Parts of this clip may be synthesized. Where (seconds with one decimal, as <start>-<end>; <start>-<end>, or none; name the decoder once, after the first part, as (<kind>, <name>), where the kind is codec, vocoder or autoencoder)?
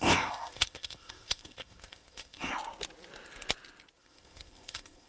0.0-2.5 (codec, ZipCodec); 4.0-5.1